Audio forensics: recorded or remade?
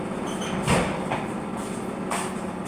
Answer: recorded